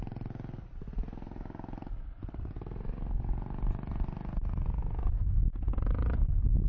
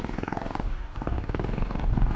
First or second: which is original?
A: first